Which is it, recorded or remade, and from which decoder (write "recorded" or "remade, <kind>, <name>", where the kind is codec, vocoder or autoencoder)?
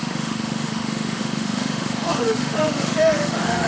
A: remade, autoencoder, DAC-VAE